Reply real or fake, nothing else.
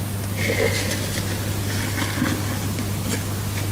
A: real